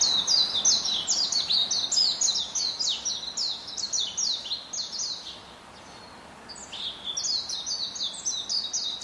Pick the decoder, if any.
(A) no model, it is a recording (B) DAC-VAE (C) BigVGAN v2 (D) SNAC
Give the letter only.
A